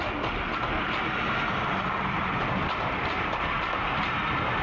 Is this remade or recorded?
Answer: recorded